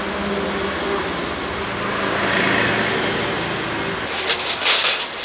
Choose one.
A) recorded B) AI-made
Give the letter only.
A